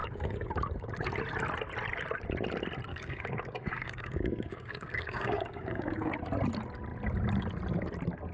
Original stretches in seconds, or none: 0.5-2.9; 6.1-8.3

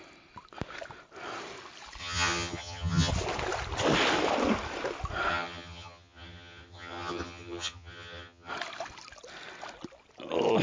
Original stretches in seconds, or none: 0.0-2.0; 3.1-5.3; 8.5-10.6

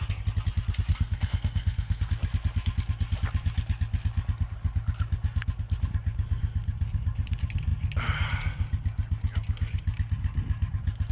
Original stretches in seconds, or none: 0.0-0.9; 2.1-11.1

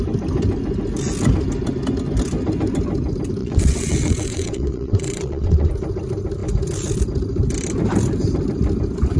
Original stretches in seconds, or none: 0.0-3.4; 5.7-9.2

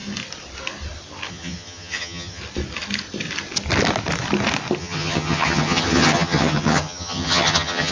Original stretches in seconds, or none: 0.0-1.3; 2.4-4.8

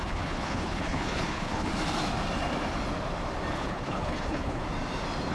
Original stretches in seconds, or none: 1.7-3.5; 4.6-5.3

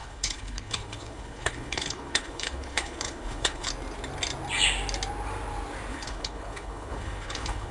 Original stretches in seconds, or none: 3.7-5.9

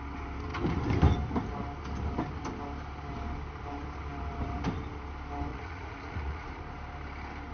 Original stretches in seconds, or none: 0.0-5.5; 6.6-7.5